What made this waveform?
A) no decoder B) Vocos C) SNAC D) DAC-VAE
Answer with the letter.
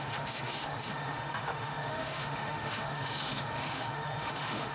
D